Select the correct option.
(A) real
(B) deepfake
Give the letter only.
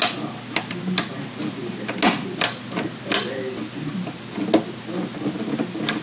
A